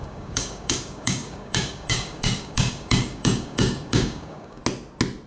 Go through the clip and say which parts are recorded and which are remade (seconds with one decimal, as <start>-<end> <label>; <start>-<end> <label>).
0.0-4.6 remade; 4.6-5.3 recorded